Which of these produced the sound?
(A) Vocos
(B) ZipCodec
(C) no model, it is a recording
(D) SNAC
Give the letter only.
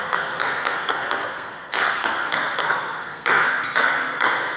D